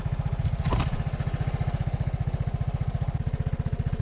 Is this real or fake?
real